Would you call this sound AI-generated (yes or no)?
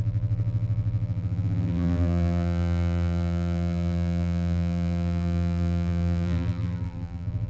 yes